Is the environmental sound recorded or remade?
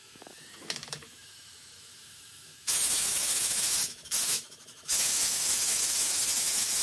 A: remade